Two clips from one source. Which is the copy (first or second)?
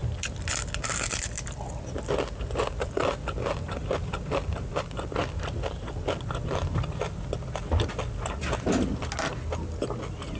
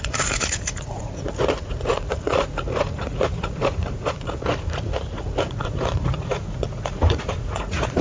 second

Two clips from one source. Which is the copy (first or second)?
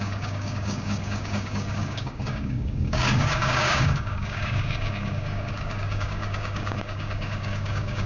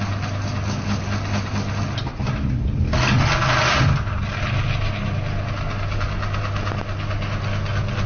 first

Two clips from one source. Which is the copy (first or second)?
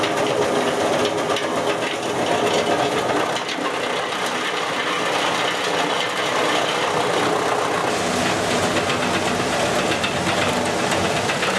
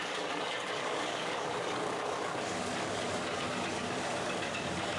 second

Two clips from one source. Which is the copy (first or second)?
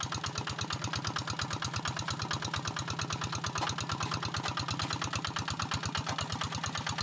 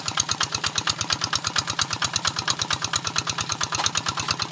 second